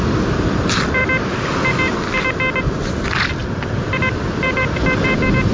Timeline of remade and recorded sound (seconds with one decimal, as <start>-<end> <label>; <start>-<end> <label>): 0.0-1.0 remade; 1.0-2.6 recorded; 2.6-5.5 remade